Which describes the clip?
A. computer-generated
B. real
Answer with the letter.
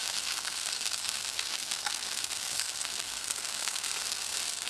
A